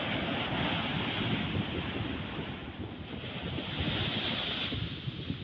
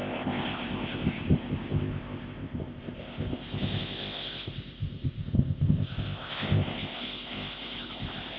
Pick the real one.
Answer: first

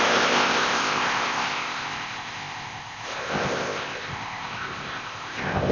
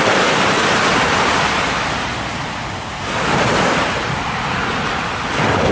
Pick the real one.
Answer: second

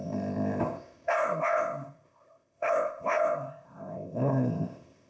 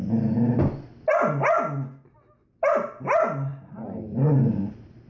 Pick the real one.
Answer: second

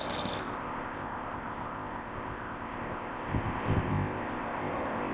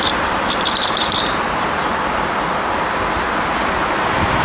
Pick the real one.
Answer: second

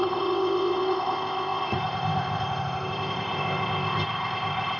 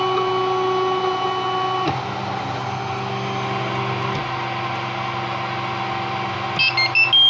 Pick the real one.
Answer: second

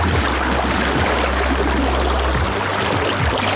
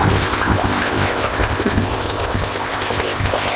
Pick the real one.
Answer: first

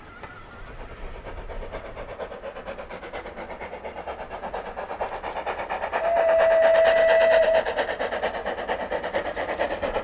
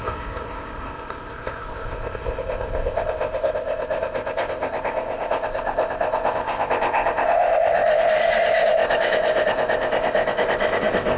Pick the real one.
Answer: first